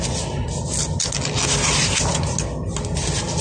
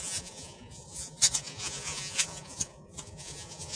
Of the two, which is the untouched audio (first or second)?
first